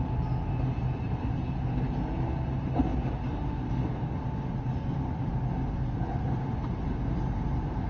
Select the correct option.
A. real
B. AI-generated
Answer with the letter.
A